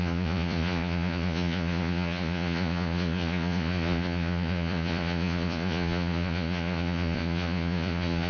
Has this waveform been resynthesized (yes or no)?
yes